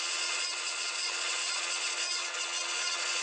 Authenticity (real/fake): fake